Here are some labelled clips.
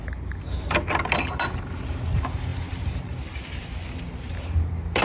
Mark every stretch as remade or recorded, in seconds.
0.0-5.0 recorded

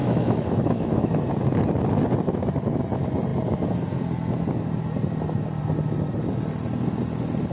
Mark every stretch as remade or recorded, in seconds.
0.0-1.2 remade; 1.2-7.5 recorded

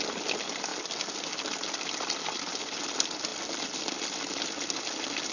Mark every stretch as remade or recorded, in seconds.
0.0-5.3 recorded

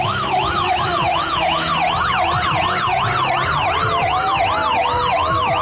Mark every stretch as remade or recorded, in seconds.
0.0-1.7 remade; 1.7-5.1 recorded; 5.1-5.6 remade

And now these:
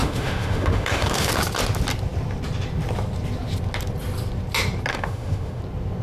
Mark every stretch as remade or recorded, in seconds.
0.0-1.3 remade; 1.3-4.9 recorded; 4.9-5.6 remade; 5.6-6.0 recorded

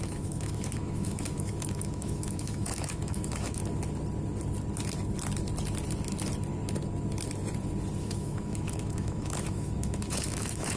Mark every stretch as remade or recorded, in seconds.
0.0-3.6 remade; 3.6-8.0 recorded; 8.0-10.8 remade

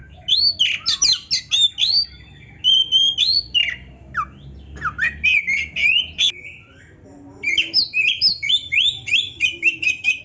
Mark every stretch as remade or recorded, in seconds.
0.0-0.5 remade; 0.5-7.6 recorded; 7.6-10.2 remade